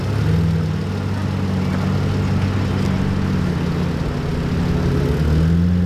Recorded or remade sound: recorded